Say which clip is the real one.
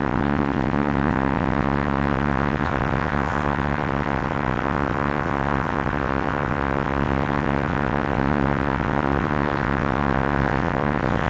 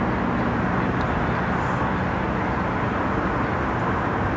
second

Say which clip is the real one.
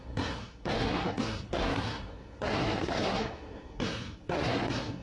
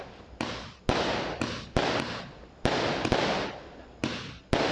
second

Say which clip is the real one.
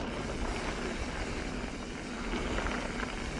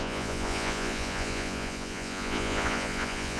first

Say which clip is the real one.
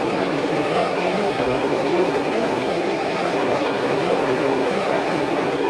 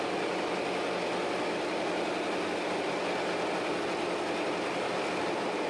second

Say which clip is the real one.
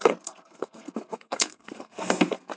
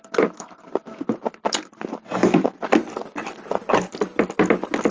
second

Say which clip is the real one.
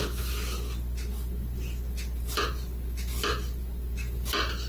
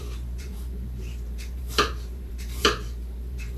first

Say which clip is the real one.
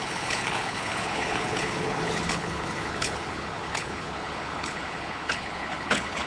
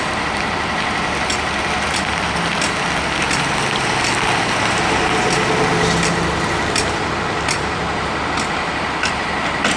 second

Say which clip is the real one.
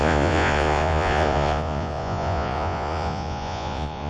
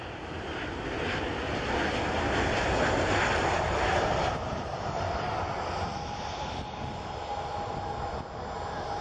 second